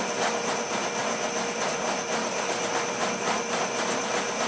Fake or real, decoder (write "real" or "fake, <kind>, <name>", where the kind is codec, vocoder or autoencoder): real